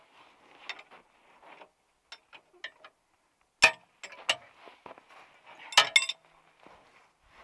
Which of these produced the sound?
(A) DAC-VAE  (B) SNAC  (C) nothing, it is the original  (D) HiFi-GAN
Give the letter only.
C